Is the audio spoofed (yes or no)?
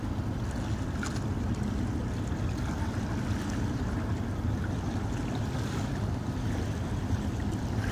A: no